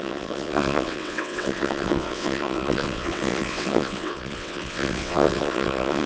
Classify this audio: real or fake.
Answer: fake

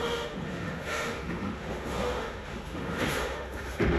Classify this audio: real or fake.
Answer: fake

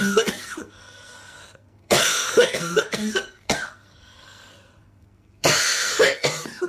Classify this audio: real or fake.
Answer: fake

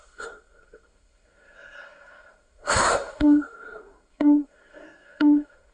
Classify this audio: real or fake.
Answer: fake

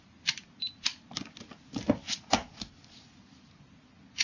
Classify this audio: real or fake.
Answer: real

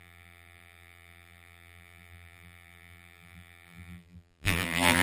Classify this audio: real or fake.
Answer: fake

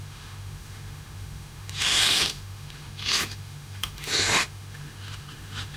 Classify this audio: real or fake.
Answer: fake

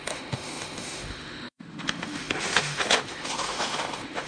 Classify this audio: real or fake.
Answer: fake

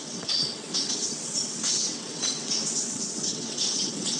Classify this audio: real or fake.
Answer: fake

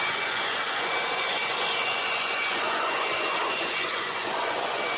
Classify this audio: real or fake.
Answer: fake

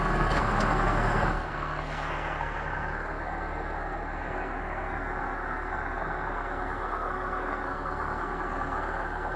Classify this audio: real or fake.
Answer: fake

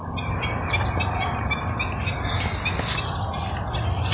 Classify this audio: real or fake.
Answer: real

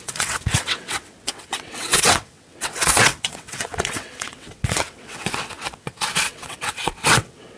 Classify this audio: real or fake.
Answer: fake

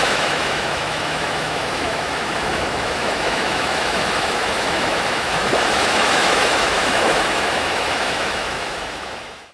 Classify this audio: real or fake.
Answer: fake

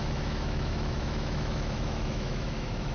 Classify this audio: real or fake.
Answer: fake